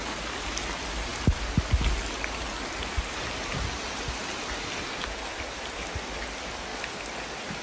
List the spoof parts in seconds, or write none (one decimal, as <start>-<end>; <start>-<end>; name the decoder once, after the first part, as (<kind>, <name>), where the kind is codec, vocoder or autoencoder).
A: none